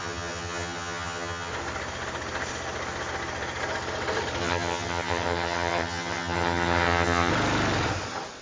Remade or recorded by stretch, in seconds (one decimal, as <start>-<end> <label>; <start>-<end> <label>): 0.0-1.5 remade; 1.5-4.4 recorded; 4.4-7.3 remade; 7.3-8.4 recorded

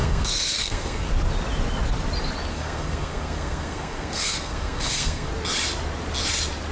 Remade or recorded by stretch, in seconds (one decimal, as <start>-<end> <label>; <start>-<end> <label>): 0.0-1.1 remade; 1.1-2.5 recorded; 2.5-5.3 remade; 5.3-6.7 recorded

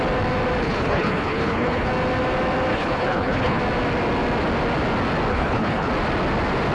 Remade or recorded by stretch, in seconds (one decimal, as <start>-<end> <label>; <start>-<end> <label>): 0.0-0.6 recorded; 0.6-1.9 remade; 1.9-2.7 recorded; 2.7-3.6 remade; 3.6-5.3 recorded; 5.3-5.9 remade; 5.9-6.7 recorded

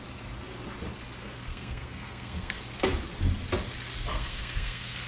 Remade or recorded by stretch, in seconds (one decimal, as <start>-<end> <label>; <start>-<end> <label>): 0.0-1.2 recorded; 1.2-2.6 remade; 2.6-4.1 recorded; 4.1-5.1 remade